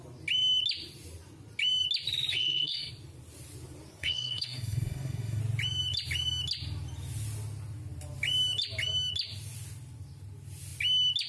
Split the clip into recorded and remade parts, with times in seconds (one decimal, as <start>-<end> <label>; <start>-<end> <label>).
0.0-2.3 recorded; 2.3-2.9 remade; 2.9-4.0 recorded; 4.0-5.4 remade; 5.4-11.3 recorded